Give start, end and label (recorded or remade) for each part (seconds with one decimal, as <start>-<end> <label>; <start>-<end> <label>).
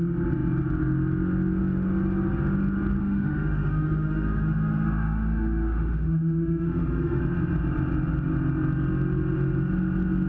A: 0.0-3.0 recorded; 3.0-7.2 remade; 7.2-10.3 recorded